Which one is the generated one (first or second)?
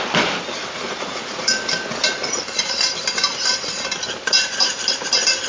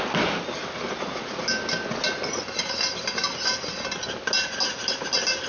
first